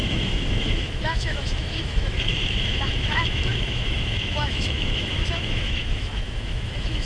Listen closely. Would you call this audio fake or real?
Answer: fake